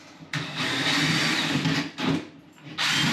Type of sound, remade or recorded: recorded